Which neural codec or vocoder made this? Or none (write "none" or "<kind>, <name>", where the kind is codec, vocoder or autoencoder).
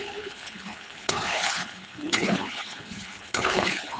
codec, HILCodec